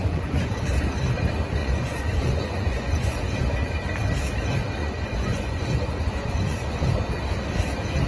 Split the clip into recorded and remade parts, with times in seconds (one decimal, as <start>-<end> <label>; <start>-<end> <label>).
0.0-0.5 remade; 0.5-1.6 recorded; 1.6-3.4 remade; 3.4-4.8 recorded; 4.8-7.1 remade; 7.1-8.1 recorded